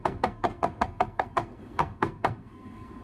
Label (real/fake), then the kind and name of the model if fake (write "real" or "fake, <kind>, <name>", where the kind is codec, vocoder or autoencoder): fake, codec, SNAC